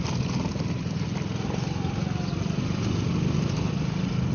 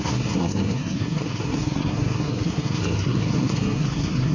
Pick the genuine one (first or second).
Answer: first